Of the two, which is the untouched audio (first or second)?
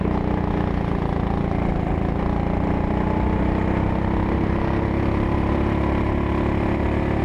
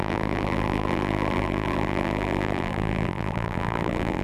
first